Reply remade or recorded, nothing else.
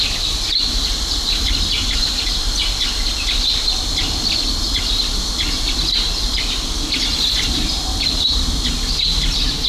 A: recorded